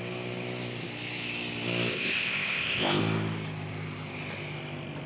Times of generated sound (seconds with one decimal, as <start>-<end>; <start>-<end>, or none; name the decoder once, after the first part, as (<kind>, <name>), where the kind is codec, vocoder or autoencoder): 1.9-3.0 (codec, ZipCodec)